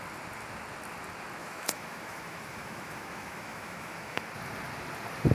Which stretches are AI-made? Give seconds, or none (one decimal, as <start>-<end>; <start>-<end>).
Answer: 1.4-4.2